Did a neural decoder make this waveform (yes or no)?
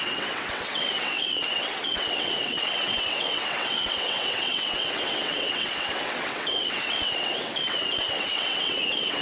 yes